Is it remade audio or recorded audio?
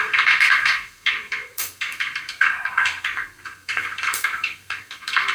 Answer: remade